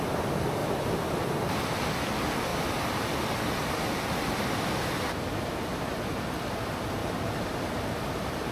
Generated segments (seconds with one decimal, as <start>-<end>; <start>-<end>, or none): 0.6-1.3; 7.0-8.5